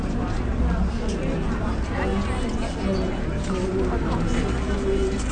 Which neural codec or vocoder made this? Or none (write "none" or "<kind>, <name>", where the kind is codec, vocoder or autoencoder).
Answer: none